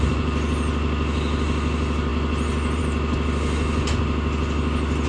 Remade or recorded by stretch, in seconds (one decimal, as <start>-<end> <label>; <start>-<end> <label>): 0.0-5.1 recorded